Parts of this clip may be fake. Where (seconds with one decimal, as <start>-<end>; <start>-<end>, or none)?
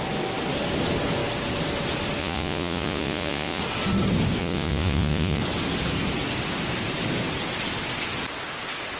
2.2-3.6; 4.4-5.4